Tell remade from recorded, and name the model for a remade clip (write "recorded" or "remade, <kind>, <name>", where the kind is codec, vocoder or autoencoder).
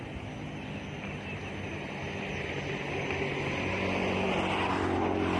recorded